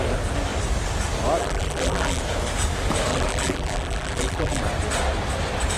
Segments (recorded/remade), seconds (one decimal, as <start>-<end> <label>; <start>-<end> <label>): 0.0-1.4 recorded; 1.4-2.2 remade; 2.2-3.1 recorded; 3.1-4.6 remade; 4.6-5.8 recorded

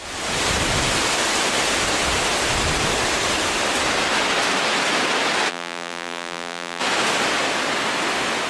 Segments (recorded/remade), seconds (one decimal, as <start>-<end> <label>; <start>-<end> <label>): 0.0-5.5 recorded; 5.5-6.8 remade; 6.8-8.5 recorded

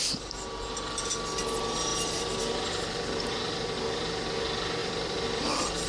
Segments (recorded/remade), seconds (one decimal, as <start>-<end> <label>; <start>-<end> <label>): 0.0-4.8 recorded; 4.8-5.9 remade

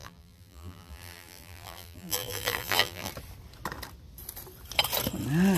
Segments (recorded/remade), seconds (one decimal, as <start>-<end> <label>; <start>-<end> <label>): 0.0-3.1 remade; 3.1-5.6 recorded